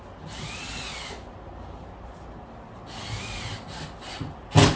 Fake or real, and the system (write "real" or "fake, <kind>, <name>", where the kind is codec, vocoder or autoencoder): real